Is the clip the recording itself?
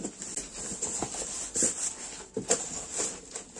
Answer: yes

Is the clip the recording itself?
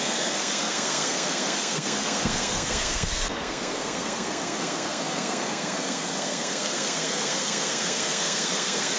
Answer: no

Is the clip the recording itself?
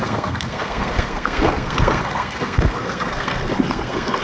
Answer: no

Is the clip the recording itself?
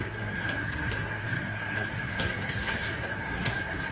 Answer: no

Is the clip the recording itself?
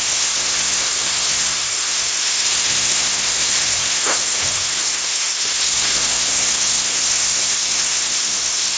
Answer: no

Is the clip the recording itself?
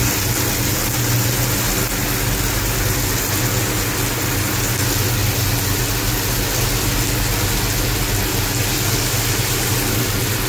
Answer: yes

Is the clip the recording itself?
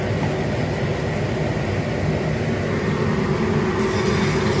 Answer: yes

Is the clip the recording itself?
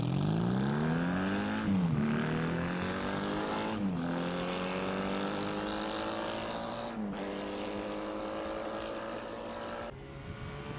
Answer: yes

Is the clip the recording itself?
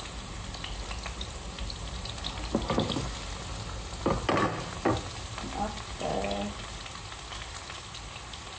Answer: yes